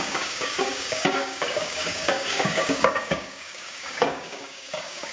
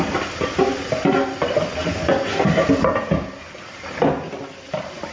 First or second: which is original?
second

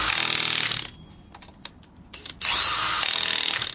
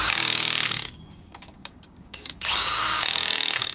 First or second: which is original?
first